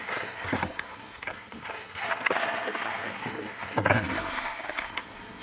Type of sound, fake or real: fake